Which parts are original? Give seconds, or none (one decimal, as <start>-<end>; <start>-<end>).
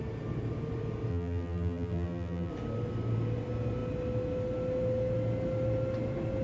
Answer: 0.0-1.1; 2.5-6.4